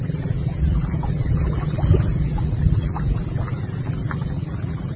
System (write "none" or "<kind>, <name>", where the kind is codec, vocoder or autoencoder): vocoder, BigVGAN v2